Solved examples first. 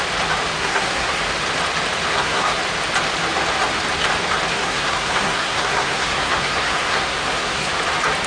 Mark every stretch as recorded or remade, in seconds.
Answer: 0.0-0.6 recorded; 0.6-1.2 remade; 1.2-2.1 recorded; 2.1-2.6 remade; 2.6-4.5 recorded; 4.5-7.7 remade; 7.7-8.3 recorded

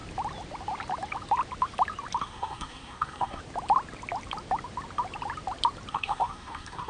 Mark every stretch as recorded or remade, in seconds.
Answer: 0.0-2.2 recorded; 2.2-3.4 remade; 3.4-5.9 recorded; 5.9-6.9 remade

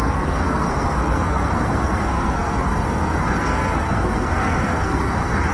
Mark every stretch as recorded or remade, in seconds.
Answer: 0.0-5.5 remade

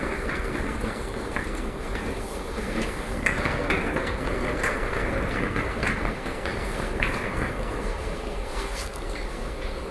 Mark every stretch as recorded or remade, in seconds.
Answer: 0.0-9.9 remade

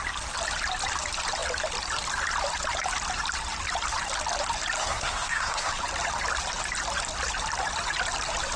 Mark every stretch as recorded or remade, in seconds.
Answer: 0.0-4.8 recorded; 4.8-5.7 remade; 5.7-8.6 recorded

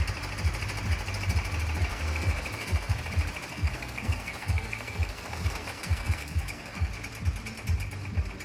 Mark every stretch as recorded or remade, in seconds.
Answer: 0.0-1.9 recorded; 1.9-3.0 remade; 3.0-3.5 recorded; 3.5-6.9 remade; 6.9-8.4 recorded

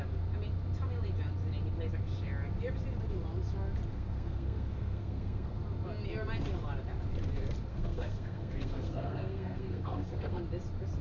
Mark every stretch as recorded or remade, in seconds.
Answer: 0.0-3.9 recorded; 3.9-5.6 remade; 5.6-7.7 recorded; 7.7-10.4 remade; 10.4-11.0 recorded